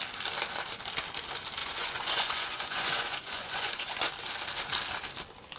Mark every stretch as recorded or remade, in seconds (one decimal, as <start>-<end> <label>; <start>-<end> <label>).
0.0-1.6 recorded; 1.6-4.1 remade; 4.1-5.6 recorded